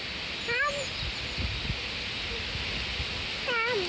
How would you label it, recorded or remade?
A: recorded